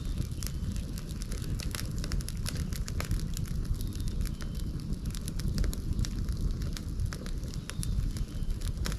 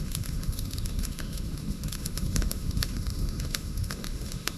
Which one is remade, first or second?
second